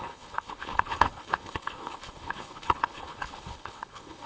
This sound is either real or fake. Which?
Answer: fake